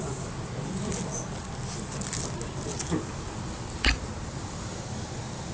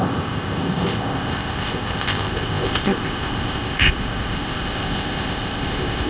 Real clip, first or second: first